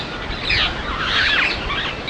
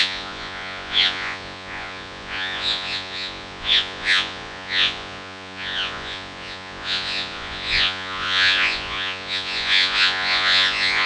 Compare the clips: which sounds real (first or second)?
first